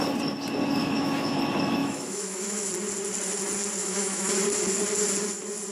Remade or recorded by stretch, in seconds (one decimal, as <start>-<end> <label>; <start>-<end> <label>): 0.0-0.8 recorded; 0.8-1.4 remade; 1.4-1.8 recorded; 1.8-2.7 remade; 2.7-3.8 recorded; 3.8-4.3 remade; 4.3-5.7 recorded